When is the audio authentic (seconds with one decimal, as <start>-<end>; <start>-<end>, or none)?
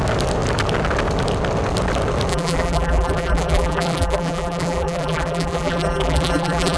0.0-2.3